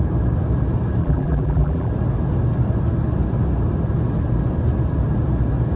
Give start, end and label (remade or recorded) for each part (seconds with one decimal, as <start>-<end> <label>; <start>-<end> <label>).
0.0-1.0 recorded; 1.0-1.9 remade; 1.9-5.8 recorded